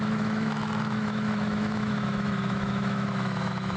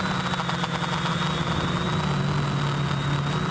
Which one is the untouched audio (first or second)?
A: second